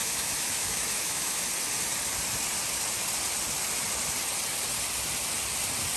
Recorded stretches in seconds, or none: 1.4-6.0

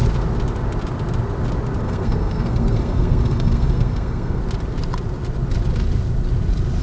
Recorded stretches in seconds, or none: 0.0-1.8; 4.4-6.8

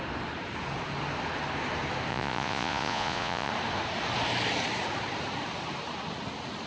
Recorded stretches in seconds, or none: 0.0-2.1; 3.5-6.7